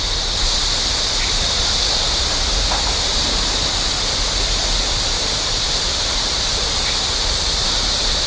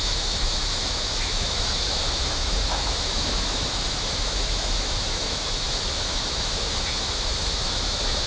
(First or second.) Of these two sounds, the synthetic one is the second